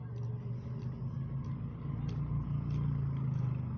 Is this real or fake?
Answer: real